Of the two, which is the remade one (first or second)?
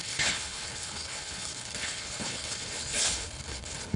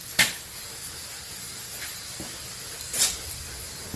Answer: first